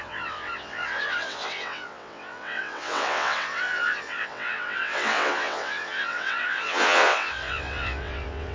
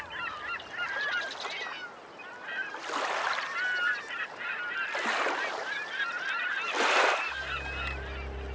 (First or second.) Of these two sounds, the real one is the second